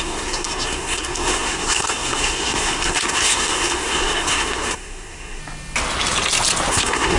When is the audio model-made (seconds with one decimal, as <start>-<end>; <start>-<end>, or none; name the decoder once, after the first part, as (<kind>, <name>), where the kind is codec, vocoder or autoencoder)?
0.0-5.4 (codec, SNAC); 6.7-7.2